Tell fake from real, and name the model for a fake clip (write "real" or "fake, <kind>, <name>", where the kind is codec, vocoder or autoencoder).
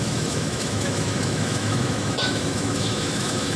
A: fake, autoencoder, DAC-VAE